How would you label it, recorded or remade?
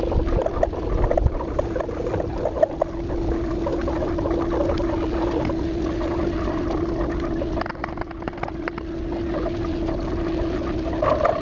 recorded